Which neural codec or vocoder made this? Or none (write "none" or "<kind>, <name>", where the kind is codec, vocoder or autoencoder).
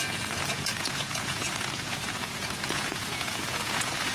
vocoder, Vocos